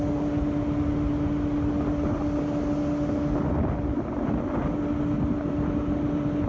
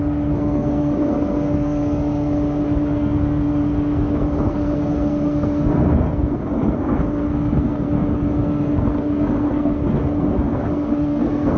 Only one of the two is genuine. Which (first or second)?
first